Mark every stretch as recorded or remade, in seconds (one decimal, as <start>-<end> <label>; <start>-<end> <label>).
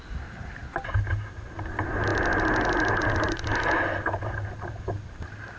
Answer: 0.0-5.6 recorded